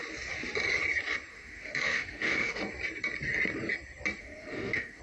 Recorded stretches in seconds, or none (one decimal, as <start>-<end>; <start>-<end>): 0.0-1.3; 2.6-4.2